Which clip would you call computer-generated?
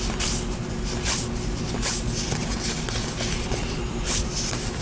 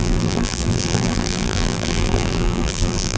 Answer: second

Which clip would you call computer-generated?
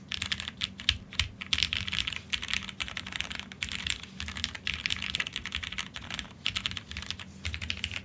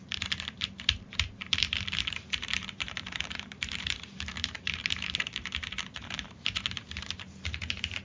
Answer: second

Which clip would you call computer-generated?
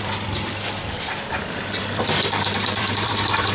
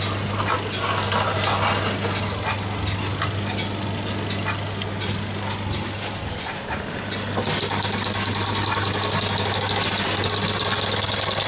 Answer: first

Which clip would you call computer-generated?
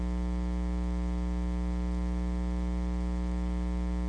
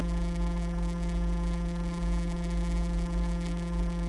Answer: second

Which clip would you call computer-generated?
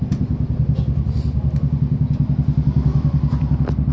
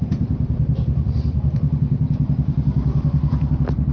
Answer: second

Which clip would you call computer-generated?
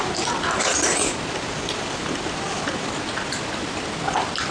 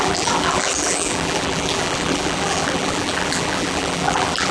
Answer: second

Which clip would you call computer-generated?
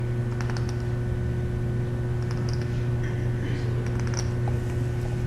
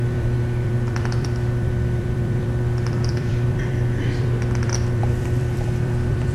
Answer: second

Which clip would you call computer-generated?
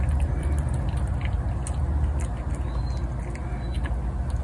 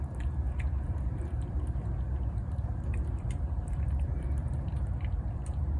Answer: second